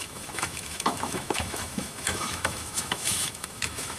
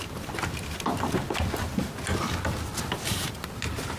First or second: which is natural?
second